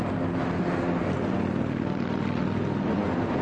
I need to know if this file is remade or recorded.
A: recorded